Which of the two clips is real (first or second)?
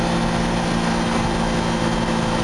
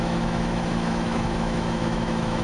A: first